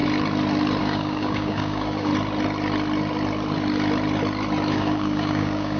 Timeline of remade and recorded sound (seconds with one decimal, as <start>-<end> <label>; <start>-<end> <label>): 0.0-0.8 recorded; 0.8-2.1 remade; 2.1-4.7 recorded; 4.7-5.8 remade